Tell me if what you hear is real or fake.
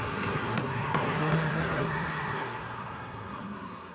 fake